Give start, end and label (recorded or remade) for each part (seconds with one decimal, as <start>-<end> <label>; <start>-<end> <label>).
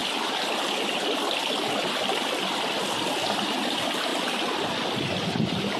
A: 0.0-3.5 recorded; 3.5-5.8 remade